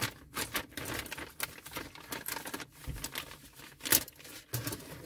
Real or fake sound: real